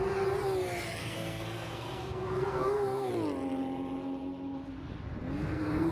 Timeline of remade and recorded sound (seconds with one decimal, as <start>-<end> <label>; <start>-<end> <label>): 0.0-1.0 recorded; 1.0-3.1 remade; 3.1-5.2 recorded; 5.2-5.9 remade